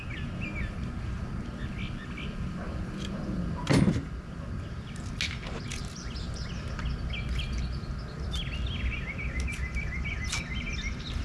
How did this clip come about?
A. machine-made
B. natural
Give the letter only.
B